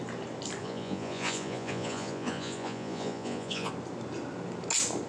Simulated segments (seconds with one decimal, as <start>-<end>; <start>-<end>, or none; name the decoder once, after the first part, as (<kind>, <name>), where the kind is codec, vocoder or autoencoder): 0.6-3.7 (vocoder, Vocos)